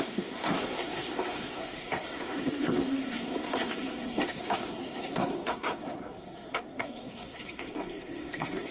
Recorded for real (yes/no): no